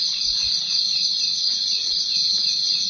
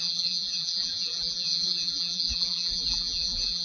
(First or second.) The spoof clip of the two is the second